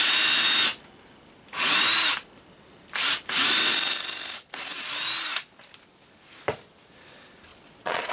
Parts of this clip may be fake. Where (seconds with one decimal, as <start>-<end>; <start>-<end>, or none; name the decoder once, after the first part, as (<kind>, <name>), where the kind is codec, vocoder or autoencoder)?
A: 7.5-8.1 (vocoder, Vocos)